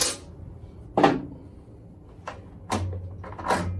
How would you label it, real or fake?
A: real